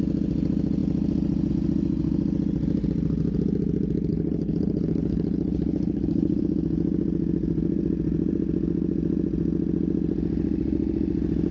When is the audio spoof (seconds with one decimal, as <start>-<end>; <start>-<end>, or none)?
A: 4.1-6.4